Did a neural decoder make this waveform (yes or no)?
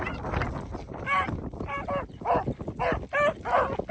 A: no